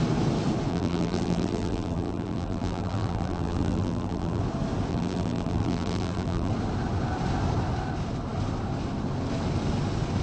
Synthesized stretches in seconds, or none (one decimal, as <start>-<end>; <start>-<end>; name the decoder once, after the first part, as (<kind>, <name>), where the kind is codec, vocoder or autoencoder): 0.7-4.4 (vocoder, BigVGAN v2); 4.9-6.5